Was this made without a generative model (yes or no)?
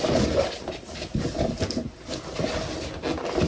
yes